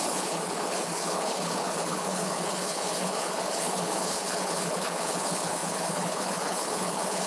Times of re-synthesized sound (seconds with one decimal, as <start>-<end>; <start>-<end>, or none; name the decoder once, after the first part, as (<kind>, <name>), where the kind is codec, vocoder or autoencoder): 0.0-7.3 (codec, HILCodec)